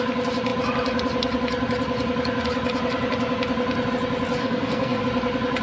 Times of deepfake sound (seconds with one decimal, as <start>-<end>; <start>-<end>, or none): 4.4-5.0